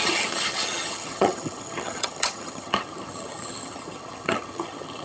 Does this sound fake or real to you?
fake